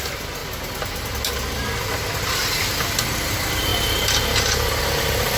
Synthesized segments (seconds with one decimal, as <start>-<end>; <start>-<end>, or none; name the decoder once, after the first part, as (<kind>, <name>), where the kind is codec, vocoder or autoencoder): 0.0-0.4 (vocoder, BigVGAN v2); 2.6-3.7; 4.7-5.4